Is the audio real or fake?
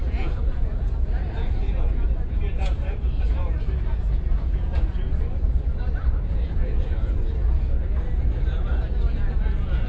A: fake